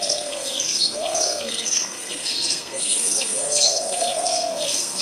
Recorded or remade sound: remade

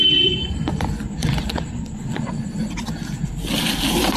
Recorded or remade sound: remade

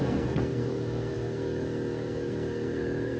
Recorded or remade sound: remade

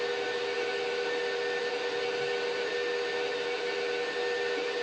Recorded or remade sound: recorded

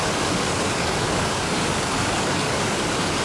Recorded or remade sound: remade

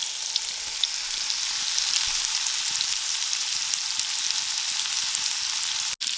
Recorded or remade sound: recorded